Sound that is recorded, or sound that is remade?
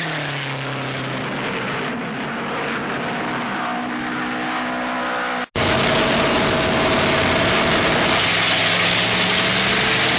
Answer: recorded